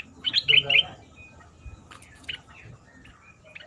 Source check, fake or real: real